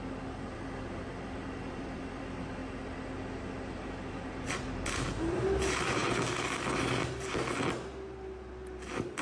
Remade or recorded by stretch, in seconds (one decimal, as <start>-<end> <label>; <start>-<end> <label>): 0.0-2.6 remade; 2.6-3.9 recorded; 3.9-6.0 remade; 6.0-8.5 recorded; 8.5-9.2 remade